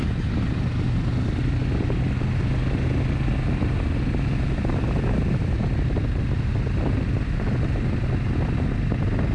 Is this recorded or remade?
recorded